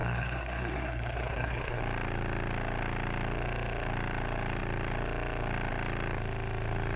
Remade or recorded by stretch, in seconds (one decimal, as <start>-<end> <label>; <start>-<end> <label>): 0.0-1.8 remade; 1.8-7.0 recorded